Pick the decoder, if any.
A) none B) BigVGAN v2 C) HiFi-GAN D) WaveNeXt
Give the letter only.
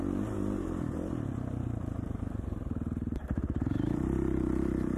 B